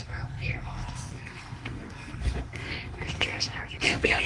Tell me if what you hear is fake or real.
fake